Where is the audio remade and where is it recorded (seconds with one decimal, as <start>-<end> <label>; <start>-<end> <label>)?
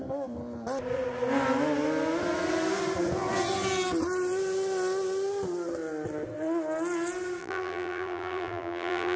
0.0-7.4 recorded; 7.4-9.2 remade